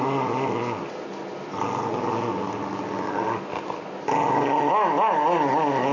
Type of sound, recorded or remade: recorded